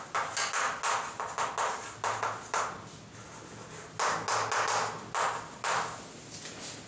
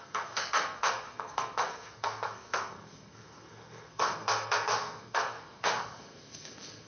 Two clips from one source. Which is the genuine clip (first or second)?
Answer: first